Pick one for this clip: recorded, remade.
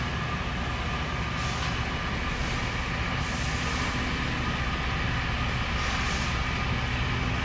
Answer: recorded